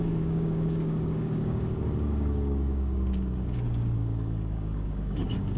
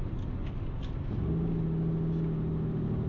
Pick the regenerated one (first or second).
first